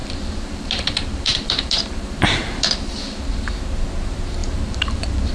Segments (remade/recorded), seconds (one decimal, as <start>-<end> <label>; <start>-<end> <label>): 0.0-3.2 remade; 3.2-4.4 recorded; 4.4-5.3 remade